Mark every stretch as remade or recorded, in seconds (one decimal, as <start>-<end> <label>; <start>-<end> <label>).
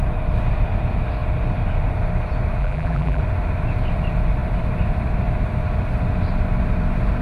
0.0-2.6 recorded; 2.6-3.2 remade; 3.2-7.2 recorded